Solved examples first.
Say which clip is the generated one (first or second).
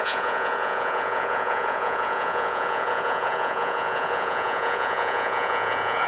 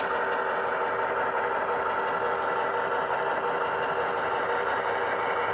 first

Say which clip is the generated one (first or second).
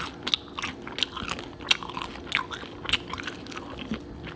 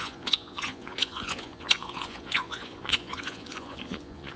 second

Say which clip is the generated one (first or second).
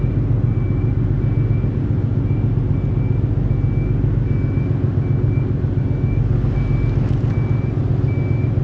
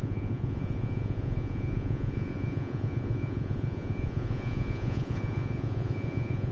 second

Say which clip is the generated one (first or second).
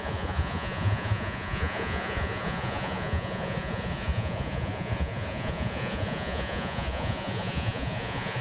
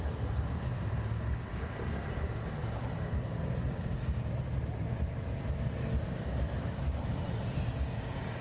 first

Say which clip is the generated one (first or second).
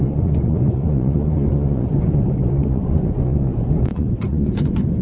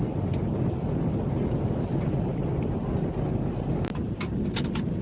first